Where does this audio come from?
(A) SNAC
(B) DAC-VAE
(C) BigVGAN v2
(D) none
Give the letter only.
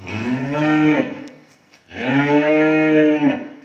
A